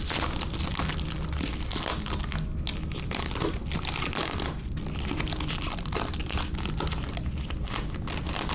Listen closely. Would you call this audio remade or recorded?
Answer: recorded